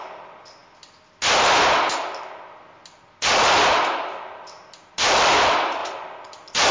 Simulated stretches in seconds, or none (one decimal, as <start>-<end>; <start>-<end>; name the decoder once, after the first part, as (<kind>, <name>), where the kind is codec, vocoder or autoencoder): none